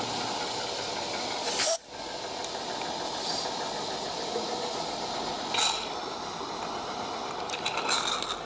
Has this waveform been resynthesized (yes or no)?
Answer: no